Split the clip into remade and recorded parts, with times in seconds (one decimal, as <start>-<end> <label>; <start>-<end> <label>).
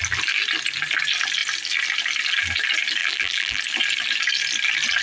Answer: 0.0-3.0 recorded; 3.0-3.6 remade; 3.6-5.0 recorded